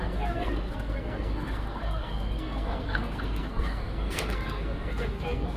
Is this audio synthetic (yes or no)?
yes